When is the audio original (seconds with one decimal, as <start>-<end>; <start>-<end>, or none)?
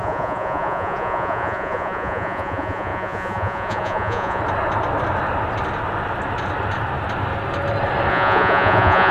4.4-8.1